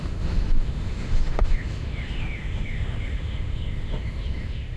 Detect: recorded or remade remade